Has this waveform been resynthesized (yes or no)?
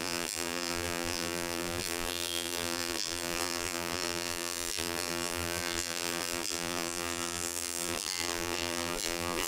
yes